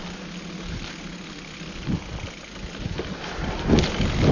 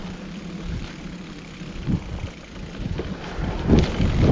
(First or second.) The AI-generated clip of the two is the second